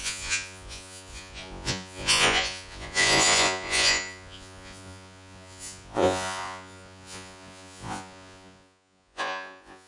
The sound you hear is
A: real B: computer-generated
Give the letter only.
B